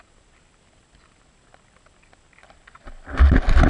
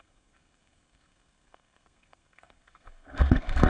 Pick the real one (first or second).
first